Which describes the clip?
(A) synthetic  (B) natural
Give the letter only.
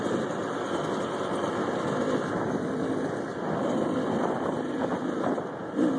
B